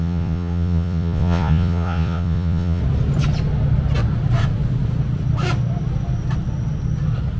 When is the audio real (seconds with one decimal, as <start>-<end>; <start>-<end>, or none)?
2.8-7.4